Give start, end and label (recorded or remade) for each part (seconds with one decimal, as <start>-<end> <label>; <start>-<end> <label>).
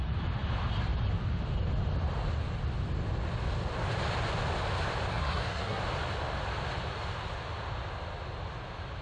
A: 0.0-5.1 recorded; 5.1-5.8 remade; 5.8-9.0 recorded